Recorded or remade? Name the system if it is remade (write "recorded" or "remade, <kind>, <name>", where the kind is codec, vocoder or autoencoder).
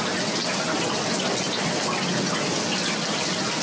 recorded